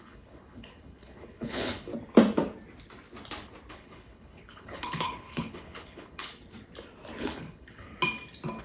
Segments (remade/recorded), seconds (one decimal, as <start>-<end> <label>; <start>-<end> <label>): 0.0-1.9 remade; 1.9-3.7 recorded; 3.7-6.3 remade; 6.3-7.2 recorded; 7.2-7.9 remade; 7.9-8.6 recorded